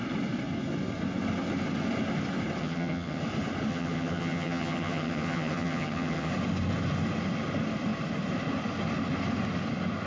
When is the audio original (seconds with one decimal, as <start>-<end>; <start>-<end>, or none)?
0.0-2.6; 3.2-3.7; 6.3-10.1